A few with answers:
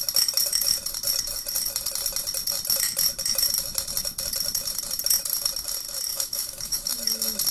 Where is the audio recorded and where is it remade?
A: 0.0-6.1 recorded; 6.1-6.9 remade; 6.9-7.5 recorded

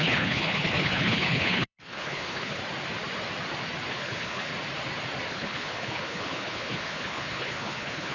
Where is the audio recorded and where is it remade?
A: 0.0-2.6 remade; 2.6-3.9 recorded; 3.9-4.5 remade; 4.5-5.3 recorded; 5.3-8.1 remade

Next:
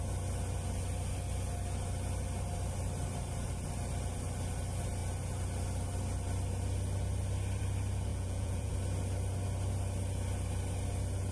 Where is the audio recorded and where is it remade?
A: 0.0-8.1 recorded; 8.1-8.7 remade; 8.7-11.3 recorded

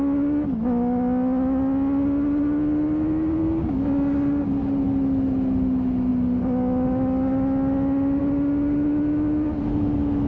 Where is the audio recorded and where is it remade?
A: 0.0-10.3 recorded

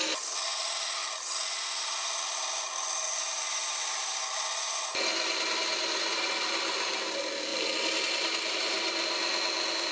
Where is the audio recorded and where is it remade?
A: 0.0-9.9 recorded